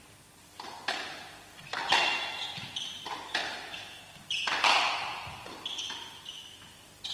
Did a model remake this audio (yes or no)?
no